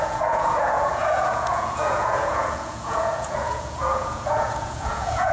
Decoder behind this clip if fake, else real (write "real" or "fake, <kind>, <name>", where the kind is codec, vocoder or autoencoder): fake, vocoder, Vocos